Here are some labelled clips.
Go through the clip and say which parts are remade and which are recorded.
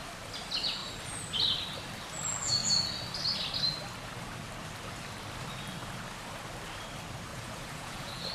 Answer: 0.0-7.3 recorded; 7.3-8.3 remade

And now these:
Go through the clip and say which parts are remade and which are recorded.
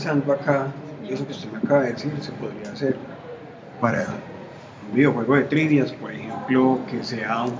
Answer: 0.0-3.0 recorded; 3.0-4.8 remade; 4.8-7.6 recorded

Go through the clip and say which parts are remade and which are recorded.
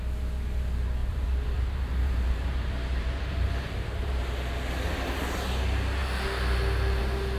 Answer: 0.0-1.0 recorded; 1.0-4.2 remade; 4.2-7.4 recorded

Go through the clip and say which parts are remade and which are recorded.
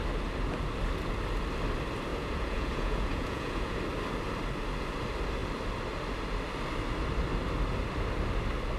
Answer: 0.0-2.1 recorded; 2.1-3.8 remade; 3.8-8.8 recorded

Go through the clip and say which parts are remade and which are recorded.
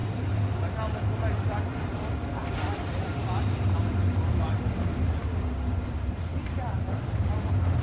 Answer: 0.0-7.8 recorded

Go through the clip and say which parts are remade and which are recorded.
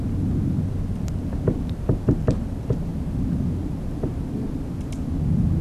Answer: 0.0-5.6 recorded